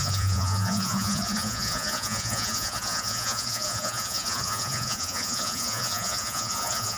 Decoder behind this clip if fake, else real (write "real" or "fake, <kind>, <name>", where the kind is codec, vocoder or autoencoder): fake, vocoder, Vocos